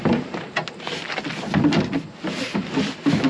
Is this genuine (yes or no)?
yes